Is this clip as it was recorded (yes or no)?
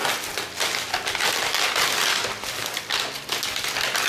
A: yes